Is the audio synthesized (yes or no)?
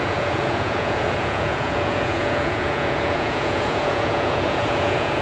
yes